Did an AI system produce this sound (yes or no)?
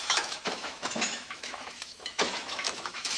yes